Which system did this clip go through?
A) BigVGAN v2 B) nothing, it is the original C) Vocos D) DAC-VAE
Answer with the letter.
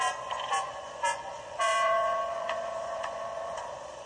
C